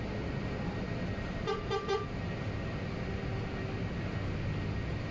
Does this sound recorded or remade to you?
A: recorded